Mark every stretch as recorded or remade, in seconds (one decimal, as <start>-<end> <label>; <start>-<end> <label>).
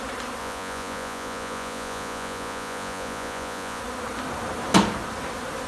0.0-0.4 recorded; 0.4-3.8 remade; 3.8-5.7 recorded